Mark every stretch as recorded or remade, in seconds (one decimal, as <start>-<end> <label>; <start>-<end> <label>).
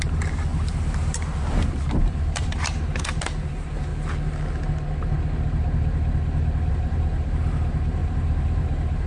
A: 0.0-3.9 remade; 3.9-6.7 recorded; 6.7-9.1 remade